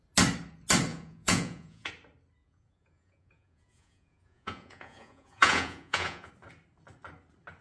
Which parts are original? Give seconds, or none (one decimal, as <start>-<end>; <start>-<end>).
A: 0.0-0.9; 1.9-2.4; 6.3-7.6